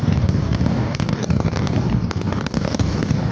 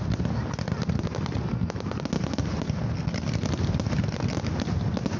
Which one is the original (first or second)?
second